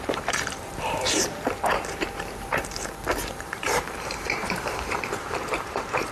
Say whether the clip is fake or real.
fake